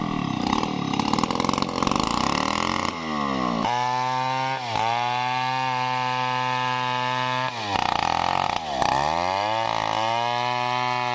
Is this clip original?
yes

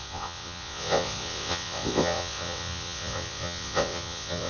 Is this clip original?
no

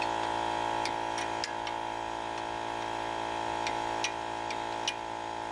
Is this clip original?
yes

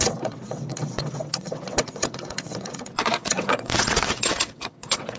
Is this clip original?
no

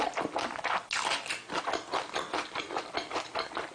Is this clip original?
yes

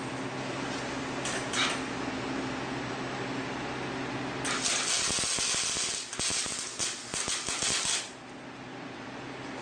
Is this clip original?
yes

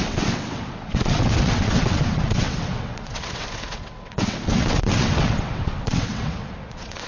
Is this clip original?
no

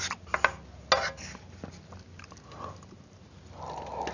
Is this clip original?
yes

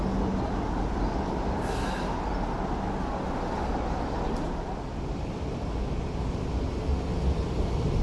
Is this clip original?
yes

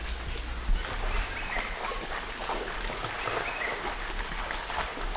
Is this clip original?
yes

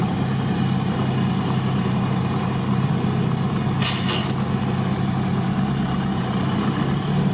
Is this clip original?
yes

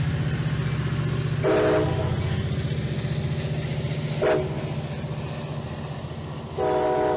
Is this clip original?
yes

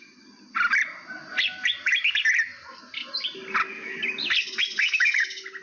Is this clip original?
yes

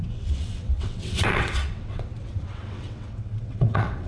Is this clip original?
no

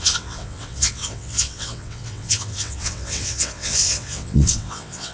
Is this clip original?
no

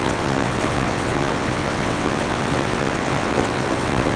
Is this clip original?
no